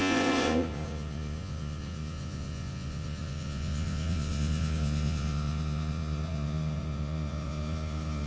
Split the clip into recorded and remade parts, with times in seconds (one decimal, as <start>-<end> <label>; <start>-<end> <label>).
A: 0.0-8.3 remade